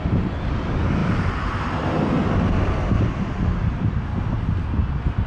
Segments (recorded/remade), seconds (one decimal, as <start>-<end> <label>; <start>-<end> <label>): 0.0-1.0 recorded; 1.0-2.2 remade; 2.2-5.3 recorded